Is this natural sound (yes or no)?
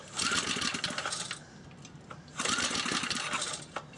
yes